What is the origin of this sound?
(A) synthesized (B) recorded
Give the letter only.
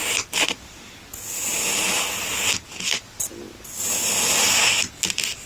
B